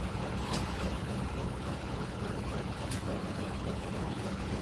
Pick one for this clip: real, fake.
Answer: fake